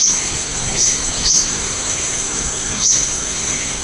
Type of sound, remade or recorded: remade